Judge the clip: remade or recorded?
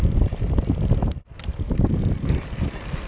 recorded